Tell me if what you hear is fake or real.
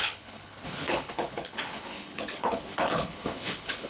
fake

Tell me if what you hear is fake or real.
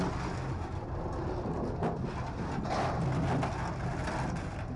real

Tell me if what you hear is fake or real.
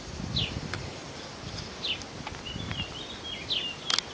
real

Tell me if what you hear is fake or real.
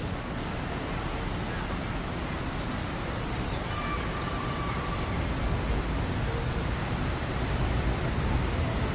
real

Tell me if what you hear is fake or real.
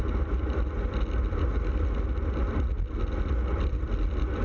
real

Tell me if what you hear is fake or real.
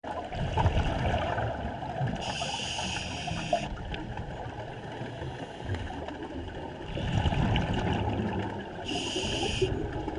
real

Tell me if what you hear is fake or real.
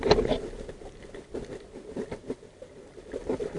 real